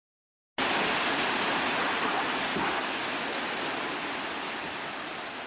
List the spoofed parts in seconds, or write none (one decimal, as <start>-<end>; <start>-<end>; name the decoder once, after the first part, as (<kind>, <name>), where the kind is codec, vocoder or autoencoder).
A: none